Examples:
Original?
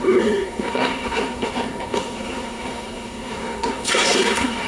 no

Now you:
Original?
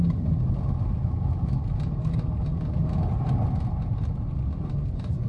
yes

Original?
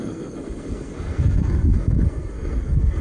no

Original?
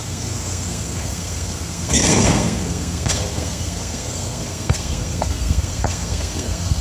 no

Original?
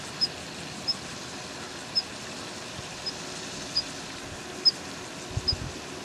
yes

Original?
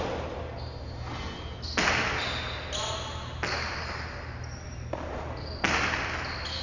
yes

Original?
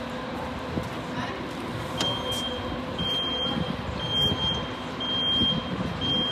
yes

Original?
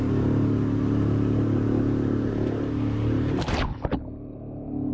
yes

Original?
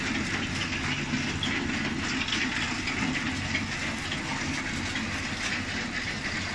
yes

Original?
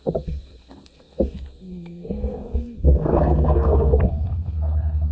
no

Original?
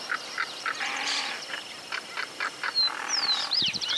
yes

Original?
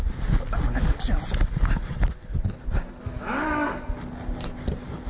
yes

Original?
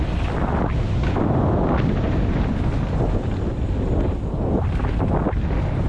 yes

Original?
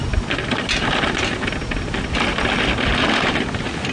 yes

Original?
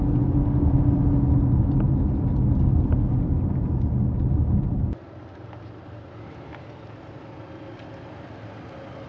yes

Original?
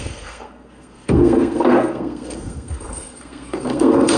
no